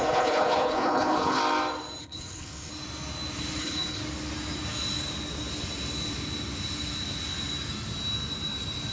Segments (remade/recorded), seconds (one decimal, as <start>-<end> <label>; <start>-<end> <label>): 0.0-1.4 remade; 1.4-2.0 recorded; 2.0-2.7 remade; 2.7-3.6 recorded; 3.6-4.0 remade; 4.0-8.9 recorded